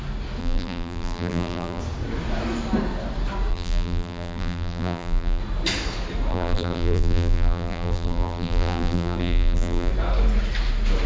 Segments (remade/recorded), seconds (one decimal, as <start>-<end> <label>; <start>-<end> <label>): 0.0-0.4 recorded; 0.4-1.8 remade; 1.8-3.5 recorded; 3.5-5.4 remade; 5.4-6.3 recorded; 6.3-9.9 remade; 9.9-11.1 recorded